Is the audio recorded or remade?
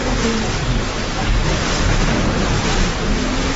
recorded